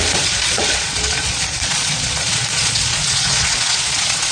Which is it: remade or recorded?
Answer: remade